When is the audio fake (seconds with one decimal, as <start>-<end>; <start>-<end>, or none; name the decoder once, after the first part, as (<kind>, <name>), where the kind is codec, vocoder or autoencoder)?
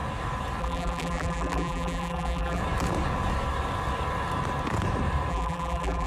0.6-2.6 (vocoder, BigVGAN v2); 5.3-6.1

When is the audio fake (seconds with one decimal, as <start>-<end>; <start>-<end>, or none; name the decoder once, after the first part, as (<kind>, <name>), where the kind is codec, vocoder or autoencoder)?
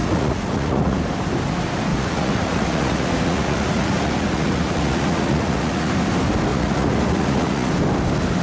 0.0-1.0 (vocoder, Vocos); 1.9-5.9; 6.5-7.7